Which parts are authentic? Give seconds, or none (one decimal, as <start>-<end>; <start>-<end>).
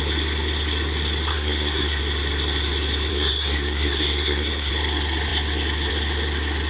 0.0-1.3; 2.0-3.1; 4.7-6.7